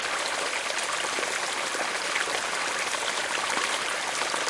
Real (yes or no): yes